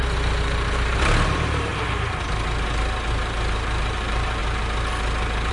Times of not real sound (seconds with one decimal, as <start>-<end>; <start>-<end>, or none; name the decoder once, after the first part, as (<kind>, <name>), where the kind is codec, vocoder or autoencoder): 0.0-1.7 (vocoder, BigVGAN v2); 3.1-4.4